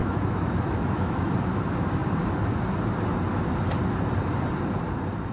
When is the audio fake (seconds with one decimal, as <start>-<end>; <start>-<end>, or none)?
0.0-1.3